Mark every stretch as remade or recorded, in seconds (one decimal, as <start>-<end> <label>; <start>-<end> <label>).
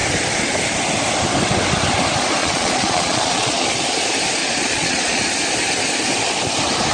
0.0-2.4 recorded; 2.4-3.7 remade; 3.7-4.4 recorded; 4.4-5.2 remade; 5.2-6.9 recorded